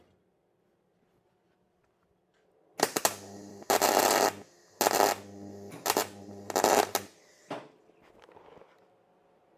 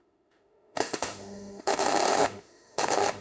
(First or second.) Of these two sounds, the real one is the first